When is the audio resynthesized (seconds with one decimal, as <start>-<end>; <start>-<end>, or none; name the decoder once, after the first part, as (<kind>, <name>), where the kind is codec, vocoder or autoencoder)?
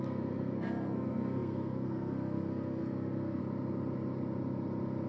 0.0-3.4 (codec, SNAC)